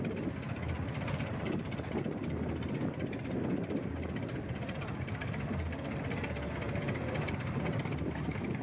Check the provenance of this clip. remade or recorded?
recorded